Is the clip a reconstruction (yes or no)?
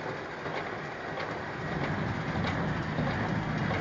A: no